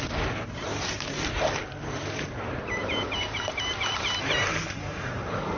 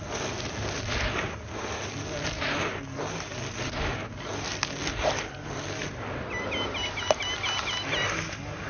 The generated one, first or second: first